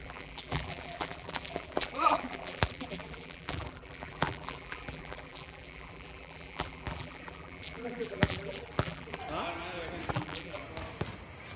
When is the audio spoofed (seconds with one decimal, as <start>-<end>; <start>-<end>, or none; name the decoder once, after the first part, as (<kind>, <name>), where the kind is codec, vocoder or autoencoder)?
0.0-9.2 (vocoder, BigVGAN v2); 10.1-10.6